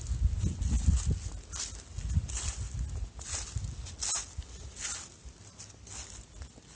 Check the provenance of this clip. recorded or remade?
recorded